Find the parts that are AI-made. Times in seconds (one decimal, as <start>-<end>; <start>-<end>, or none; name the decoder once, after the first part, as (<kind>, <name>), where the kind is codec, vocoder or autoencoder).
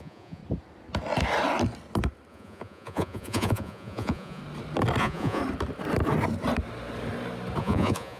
0.0-0.4 (vocoder, Vocos); 2.3-4.4; 5.0-5.4; 7.6-8.2